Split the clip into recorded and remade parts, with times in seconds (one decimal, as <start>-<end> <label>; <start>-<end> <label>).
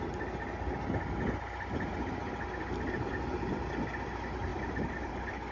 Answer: 0.0-4.5 recorded; 4.5-5.1 remade; 5.1-5.5 recorded